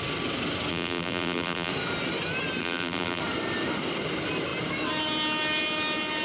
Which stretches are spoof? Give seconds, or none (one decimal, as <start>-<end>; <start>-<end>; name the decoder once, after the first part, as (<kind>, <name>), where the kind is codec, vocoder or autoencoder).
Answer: 0.7-1.7 (vocoder, BigVGAN v2); 2.6-3.2